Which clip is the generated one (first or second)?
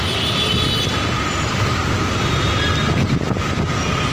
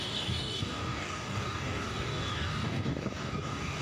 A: second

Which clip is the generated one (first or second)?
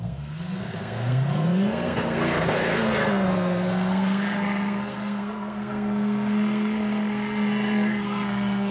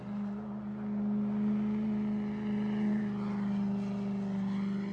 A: first